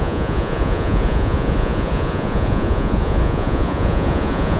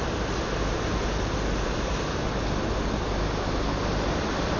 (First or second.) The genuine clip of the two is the second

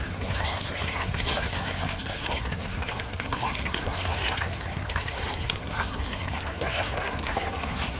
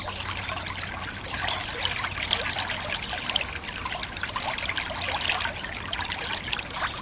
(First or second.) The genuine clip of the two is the second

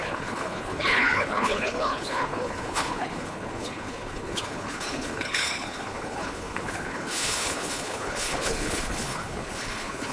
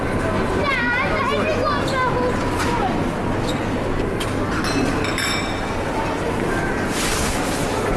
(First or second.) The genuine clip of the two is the second